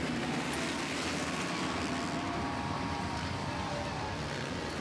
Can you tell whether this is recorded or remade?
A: recorded